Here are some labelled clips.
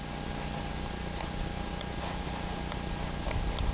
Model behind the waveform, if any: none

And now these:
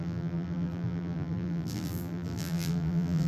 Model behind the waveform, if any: vocoder, BigVGAN v2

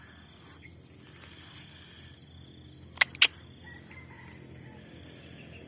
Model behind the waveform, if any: none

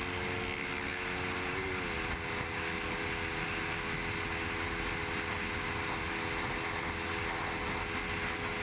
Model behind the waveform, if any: none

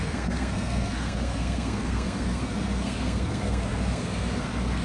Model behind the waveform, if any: codec, SNAC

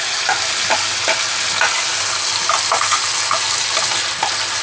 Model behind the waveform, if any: none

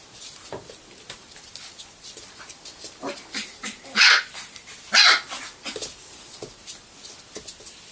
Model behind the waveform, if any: none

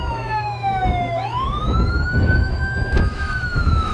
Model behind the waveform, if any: autoencoder, DAC-VAE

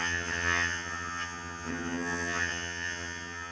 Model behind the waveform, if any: vocoder, HiFi-GAN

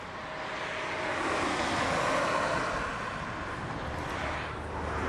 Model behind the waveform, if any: none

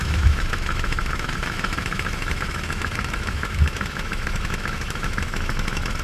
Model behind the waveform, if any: autoencoder, DAC-VAE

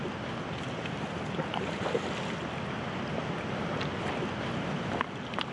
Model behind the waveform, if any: none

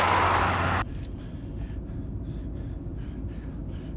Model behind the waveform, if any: none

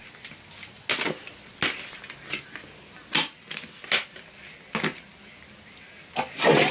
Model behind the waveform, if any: none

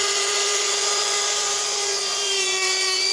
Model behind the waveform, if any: vocoder, Vocos